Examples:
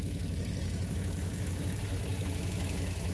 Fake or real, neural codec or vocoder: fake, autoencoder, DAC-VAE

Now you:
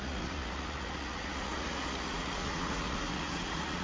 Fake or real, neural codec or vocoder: fake, vocoder, Vocos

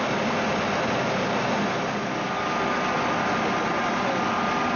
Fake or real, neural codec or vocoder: real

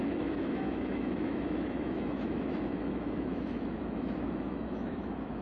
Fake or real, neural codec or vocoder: fake, autoencoder, DAC-VAE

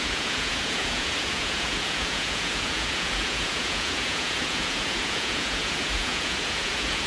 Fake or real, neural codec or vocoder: fake, vocoder, Vocos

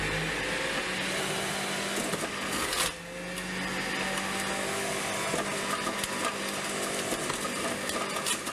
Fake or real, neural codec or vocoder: real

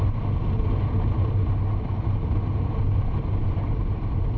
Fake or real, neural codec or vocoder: real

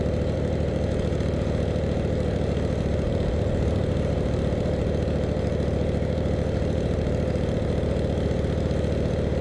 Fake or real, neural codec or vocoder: fake, vocoder, BigVGAN v2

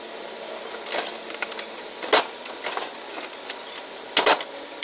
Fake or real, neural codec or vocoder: real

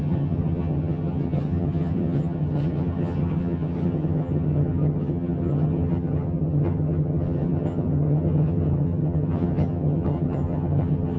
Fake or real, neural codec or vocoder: fake, vocoder, HiFi-GAN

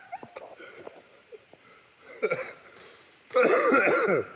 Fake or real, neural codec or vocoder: fake, vocoder, BigVGAN v2